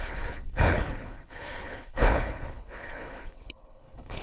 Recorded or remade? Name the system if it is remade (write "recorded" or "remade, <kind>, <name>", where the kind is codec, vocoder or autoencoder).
remade, codec, HILCodec